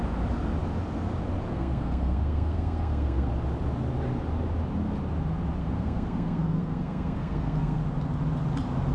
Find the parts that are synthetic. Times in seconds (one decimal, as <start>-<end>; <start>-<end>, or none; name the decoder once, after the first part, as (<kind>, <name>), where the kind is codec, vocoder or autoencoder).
1.5-3.3 (codec, SNAC); 5.6-7.8